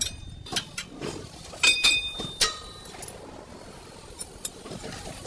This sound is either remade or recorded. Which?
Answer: recorded